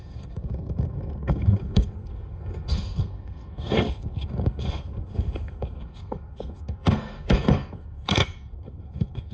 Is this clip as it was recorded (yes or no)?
no